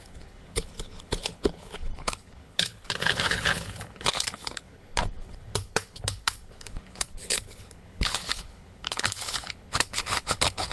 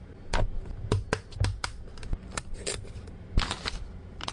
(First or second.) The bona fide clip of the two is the second